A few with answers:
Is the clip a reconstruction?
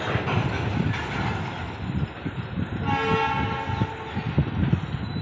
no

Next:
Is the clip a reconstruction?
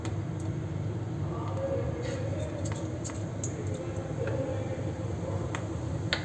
no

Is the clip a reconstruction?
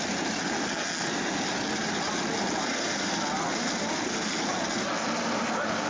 no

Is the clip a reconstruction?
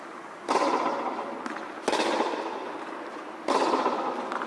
no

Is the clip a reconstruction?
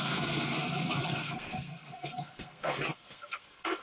yes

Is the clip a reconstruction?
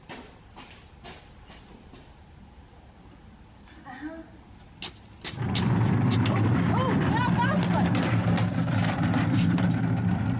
no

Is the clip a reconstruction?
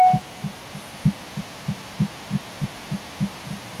no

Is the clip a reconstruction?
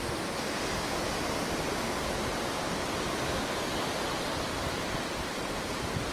no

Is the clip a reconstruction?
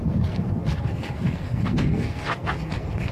yes